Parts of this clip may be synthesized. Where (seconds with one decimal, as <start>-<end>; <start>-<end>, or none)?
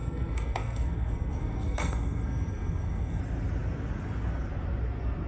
0.0-3.2